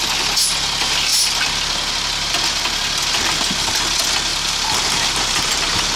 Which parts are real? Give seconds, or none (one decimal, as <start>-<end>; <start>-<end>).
0.0-6.0